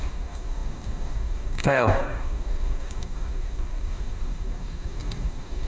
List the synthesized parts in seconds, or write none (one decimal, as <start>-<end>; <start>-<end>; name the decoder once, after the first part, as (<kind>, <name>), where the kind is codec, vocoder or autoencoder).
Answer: 0.0-5.7 (codec, DAC)

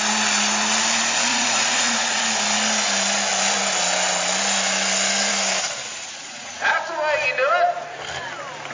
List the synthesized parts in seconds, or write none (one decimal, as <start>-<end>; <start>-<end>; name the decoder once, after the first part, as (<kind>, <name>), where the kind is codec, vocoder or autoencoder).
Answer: 1.3-2.2 (vocoder, Vocos); 5.8-6.9